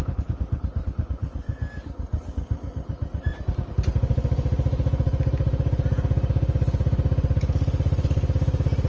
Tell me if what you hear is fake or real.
real